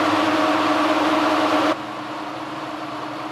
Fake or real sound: real